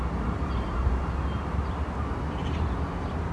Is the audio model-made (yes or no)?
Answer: no